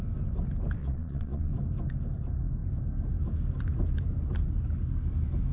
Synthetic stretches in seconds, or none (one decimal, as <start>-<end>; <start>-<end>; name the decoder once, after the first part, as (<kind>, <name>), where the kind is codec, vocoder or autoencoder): 0.8-1.5 (vocoder, Vocos)